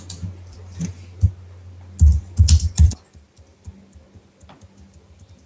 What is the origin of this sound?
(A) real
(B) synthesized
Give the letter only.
A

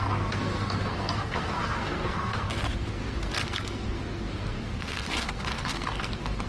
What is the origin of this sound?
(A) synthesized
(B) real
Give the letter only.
A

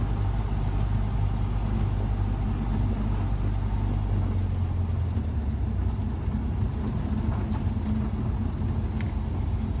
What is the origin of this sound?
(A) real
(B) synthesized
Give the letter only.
A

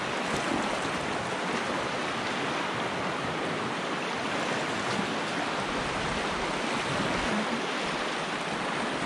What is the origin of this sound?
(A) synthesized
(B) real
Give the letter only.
B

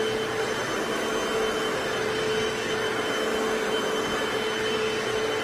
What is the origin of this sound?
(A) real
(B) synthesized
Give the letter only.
A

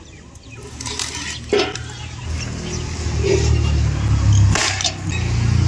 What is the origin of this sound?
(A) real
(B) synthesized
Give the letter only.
A